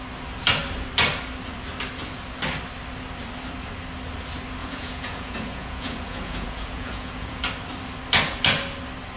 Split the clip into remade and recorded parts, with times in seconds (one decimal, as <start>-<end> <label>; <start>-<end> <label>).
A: 0.0-4.6 recorded; 4.6-7.4 remade; 7.4-9.2 recorded